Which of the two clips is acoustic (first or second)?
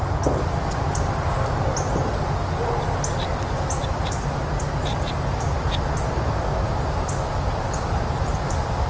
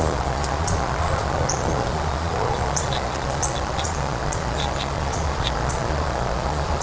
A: first